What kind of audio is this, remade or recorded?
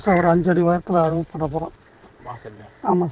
remade